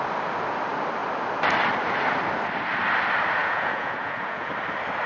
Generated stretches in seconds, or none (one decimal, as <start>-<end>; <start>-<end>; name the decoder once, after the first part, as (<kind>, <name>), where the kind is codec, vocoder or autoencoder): 3.4-4.5 (vocoder, Vocos)